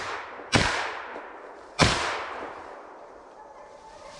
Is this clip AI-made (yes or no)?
yes